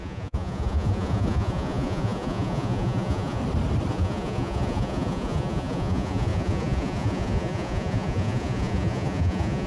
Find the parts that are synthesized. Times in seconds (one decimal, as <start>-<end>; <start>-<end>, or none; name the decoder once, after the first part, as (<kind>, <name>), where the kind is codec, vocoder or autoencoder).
0.0-3.4 (vocoder, Vocos); 3.9-9.7

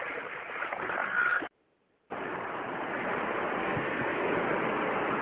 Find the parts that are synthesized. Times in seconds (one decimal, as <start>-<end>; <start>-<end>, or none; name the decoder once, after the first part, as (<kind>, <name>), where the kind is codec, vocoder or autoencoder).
3.6-4.3 (codec, SNAC)

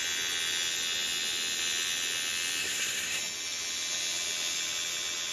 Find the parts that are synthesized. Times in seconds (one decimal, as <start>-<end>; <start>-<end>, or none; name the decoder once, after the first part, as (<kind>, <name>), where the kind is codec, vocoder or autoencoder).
2.6-3.2 (codec, SNAC)

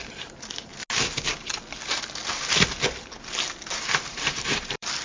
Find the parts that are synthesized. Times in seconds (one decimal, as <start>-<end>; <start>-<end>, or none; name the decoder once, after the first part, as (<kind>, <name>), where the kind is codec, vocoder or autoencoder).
0.0-0.7 (vocoder, BigVGAN v2); 3.7-5.0

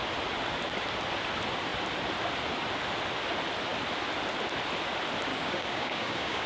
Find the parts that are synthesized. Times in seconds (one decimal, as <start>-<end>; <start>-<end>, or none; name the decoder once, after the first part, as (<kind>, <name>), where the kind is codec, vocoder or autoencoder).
5.3-6.5 (codec, DAC)

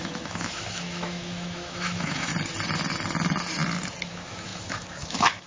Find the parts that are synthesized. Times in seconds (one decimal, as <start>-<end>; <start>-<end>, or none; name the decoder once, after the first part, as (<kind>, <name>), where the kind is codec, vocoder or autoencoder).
0.0-2.3 (autoencoder, DAC-VAE); 4.1-5.5

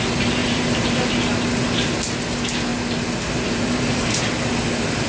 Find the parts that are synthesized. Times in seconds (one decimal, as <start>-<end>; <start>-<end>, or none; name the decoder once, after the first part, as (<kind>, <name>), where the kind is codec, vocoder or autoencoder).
0.4-1.1 (vocoder, BigVGAN v2); 2.7-4.0